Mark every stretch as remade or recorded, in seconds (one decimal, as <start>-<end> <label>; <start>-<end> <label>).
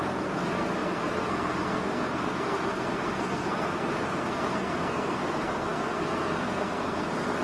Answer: 0.0-7.4 remade